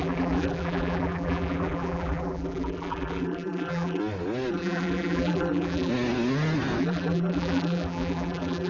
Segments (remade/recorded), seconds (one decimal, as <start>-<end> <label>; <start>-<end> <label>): 0.0-4.0 remade; 4.0-4.5 recorded; 4.5-5.9 remade; 5.9-6.8 recorded; 6.8-8.7 remade